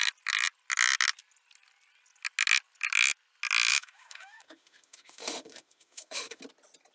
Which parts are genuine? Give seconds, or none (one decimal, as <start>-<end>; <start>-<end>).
0.0-3.7; 6.4-6.9